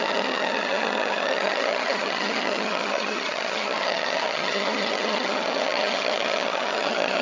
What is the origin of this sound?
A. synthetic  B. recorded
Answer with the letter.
A